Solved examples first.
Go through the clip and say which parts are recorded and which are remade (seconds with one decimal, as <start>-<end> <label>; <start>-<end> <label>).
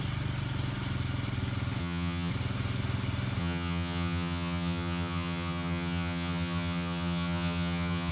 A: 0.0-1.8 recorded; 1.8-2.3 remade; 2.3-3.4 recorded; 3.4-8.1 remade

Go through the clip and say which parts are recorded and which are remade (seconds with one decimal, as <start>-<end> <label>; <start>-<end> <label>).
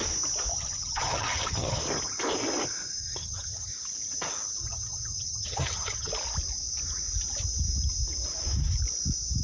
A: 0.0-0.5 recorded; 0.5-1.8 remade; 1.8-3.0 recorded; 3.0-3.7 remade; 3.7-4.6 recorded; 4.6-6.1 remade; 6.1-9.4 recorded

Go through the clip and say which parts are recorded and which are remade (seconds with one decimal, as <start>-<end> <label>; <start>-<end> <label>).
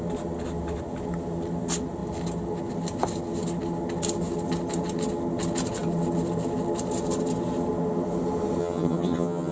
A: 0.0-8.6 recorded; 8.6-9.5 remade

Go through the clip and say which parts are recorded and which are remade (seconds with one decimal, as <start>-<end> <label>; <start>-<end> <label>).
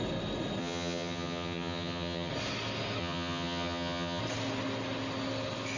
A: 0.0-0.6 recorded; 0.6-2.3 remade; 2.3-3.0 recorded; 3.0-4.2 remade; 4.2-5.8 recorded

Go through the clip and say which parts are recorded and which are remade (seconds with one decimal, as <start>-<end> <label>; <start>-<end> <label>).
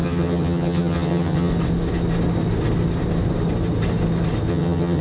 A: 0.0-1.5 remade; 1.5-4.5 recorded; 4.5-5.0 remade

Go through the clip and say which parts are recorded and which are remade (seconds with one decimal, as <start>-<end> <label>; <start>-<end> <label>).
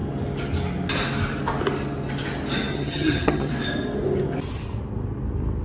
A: 0.0-2.7 recorded; 2.7-3.5 remade; 3.5-5.6 recorded